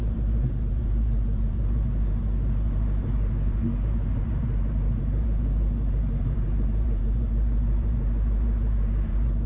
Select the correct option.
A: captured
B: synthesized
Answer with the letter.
B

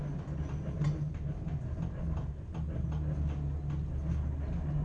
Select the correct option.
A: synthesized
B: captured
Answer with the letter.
B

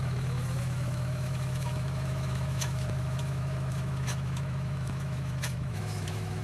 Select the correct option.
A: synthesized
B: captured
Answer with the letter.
A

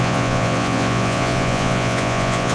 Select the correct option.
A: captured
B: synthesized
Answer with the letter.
B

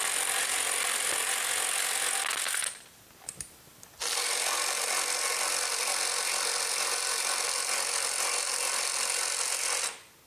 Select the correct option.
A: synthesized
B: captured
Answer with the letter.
B